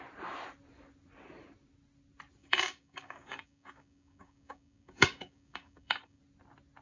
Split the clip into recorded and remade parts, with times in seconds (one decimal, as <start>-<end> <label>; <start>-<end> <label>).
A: 0.0-2.4 recorded; 2.4-6.2 remade; 6.2-6.8 recorded